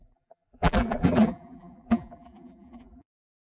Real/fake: fake